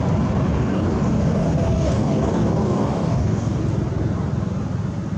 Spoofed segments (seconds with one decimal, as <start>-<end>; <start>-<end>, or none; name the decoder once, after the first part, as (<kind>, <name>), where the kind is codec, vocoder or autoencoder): 0.5-3.6 (codec, DAC)